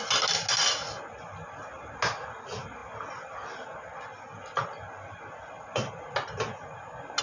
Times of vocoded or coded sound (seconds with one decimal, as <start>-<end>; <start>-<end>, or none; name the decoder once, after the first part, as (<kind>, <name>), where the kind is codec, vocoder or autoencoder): none